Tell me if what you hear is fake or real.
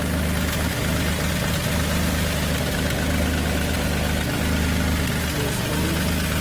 real